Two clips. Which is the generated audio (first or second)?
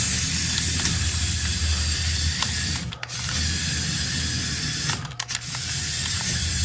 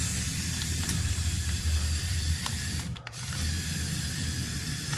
second